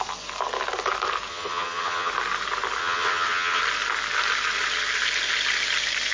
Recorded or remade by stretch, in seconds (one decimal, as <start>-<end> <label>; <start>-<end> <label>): 0.0-1.3 recorded; 1.3-2.1 remade; 2.1-2.8 recorded; 2.8-3.6 remade; 3.6-6.1 recorded